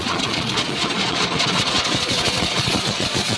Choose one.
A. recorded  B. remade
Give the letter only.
B